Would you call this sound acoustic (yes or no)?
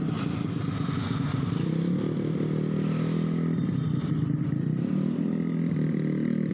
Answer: yes